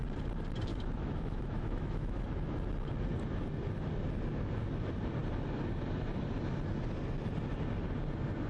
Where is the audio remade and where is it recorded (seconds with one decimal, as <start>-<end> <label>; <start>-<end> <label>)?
0.0-0.7 recorded; 0.7-2.2 remade; 2.2-8.5 recorded